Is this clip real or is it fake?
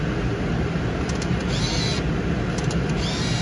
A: real